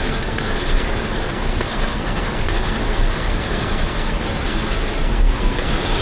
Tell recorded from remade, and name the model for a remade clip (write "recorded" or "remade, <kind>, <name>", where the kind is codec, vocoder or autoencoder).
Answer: remade, codec, SNAC